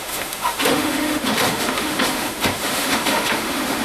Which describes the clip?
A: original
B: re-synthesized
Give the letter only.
B